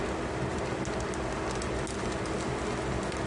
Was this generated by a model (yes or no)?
no